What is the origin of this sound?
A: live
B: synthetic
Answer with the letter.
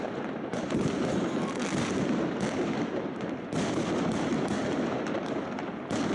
A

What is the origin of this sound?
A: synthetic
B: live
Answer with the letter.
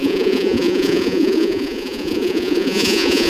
A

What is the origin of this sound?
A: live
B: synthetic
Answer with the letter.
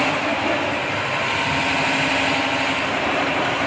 A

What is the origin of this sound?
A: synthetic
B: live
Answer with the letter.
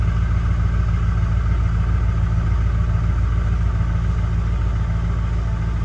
B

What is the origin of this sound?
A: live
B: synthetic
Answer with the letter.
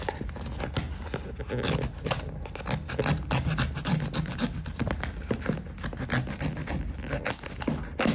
A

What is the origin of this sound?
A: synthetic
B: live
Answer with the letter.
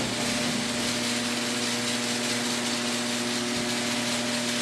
B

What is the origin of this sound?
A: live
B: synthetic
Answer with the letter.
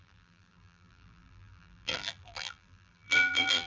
B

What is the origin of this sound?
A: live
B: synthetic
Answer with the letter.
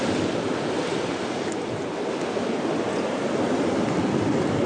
A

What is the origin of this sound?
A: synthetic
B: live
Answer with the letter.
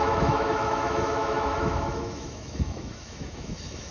A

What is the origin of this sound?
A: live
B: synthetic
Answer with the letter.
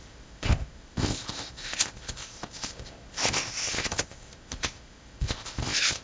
B